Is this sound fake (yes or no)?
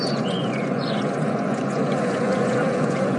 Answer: yes